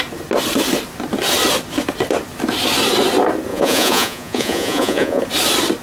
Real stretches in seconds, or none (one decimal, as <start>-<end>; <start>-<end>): 0.0-3.5; 5.2-5.8